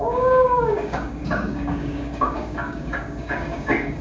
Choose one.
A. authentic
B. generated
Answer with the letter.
B